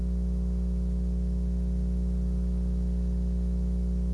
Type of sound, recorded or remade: recorded